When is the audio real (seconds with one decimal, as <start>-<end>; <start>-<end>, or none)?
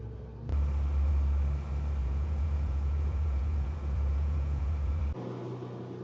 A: 0.0-2.0; 5.0-6.0